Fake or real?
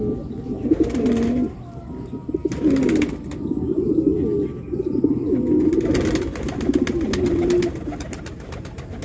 real